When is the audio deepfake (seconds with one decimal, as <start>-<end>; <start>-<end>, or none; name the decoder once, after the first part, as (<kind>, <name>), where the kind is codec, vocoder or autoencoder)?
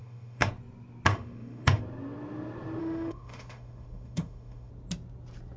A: 0.0-0.5 (autoencoder, DAC-VAE); 1.1-1.8; 2.8-4.7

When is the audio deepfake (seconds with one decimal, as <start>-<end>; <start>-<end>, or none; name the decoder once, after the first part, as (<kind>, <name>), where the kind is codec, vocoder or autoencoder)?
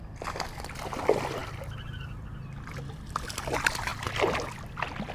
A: none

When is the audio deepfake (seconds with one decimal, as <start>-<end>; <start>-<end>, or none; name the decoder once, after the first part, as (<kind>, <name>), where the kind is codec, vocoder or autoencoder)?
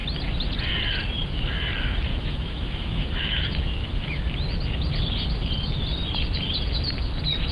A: 2.1-4.2 (autoencoder, DAC-VAE)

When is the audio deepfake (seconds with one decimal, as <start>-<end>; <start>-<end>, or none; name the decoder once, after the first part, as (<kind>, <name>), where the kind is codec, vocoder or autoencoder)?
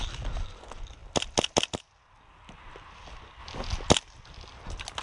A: none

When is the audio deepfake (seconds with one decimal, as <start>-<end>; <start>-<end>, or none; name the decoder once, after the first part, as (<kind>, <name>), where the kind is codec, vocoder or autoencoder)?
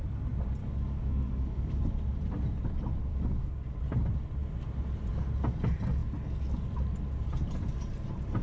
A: 0.6-1.8 (codec, DAC); 3.1-3.8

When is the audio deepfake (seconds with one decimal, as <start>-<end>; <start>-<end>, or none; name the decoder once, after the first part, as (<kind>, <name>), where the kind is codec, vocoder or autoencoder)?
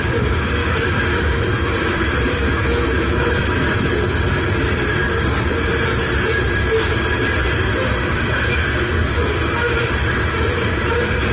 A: 0.6-3.6 (autoencoder, DAC-VAE)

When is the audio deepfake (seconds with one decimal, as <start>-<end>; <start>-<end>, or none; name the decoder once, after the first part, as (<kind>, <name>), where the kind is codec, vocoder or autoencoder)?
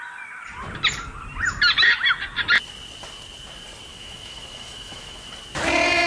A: 3.9-5.3 (autoencoder, DAC-VAE)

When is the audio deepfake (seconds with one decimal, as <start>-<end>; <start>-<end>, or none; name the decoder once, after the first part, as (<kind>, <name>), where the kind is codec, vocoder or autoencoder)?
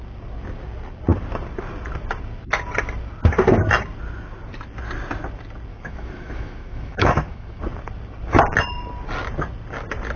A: 5.7-7.6 (autoencoder, DAC-VAE)